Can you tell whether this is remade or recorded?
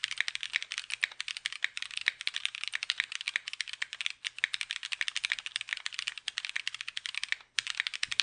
recorded